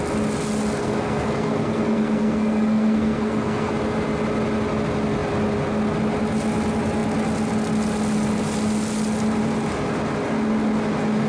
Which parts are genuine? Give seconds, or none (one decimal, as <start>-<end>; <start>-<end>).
0.0-0.8; 3.7-11.3